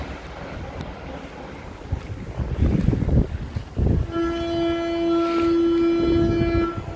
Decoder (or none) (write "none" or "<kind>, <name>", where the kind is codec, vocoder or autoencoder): none